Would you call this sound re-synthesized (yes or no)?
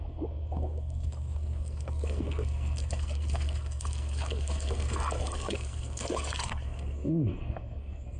yes